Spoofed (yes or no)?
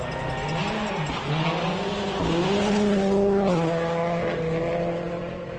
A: no